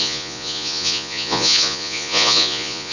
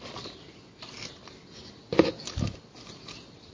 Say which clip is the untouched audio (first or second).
second